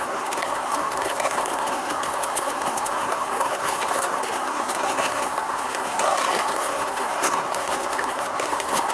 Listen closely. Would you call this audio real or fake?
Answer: fake